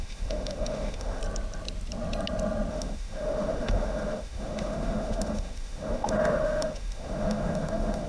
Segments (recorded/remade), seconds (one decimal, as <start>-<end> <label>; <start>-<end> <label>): 0.0-1.2 remade; 1.2-2.7 recorded; 2.7-8.1 remade